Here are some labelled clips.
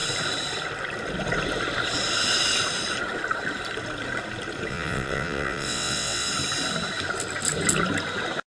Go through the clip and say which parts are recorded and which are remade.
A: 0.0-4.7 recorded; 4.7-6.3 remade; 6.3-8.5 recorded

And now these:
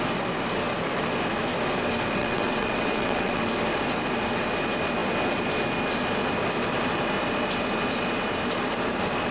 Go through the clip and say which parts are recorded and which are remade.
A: 0.0-2.2 recorded; 2.2-3.4 remade; 3.4-9.3 recorded

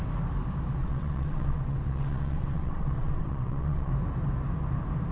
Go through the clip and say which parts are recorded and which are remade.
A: 0.0-0.8 recorded; 0.8-3.9 remade; 3.9-5.1 recorded

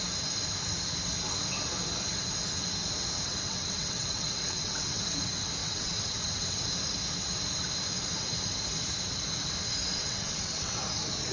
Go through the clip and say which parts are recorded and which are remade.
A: 0.0-3.3 recorded; 3.3-5.0 remade; 5.0-5.6 recorded; 5.6-6.4 remade; 6.4-9.8 recorded; 9.8-10.8 remade; 10.8-11.3 recorded